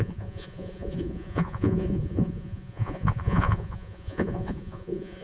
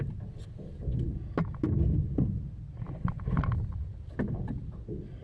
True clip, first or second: second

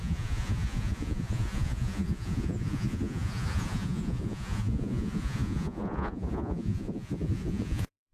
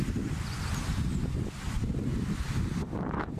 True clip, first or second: second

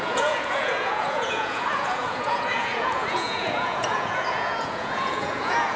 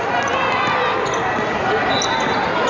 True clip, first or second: second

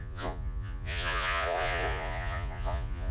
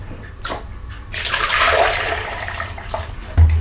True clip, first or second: second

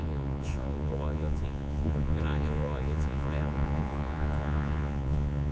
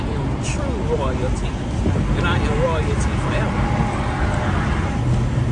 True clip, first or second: second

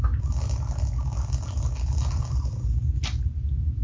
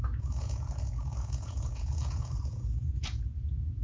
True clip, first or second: first